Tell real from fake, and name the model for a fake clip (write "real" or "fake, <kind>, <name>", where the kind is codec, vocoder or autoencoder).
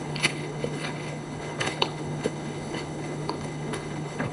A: fake, codec, HILCodec